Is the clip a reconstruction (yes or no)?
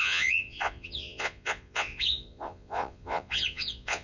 yes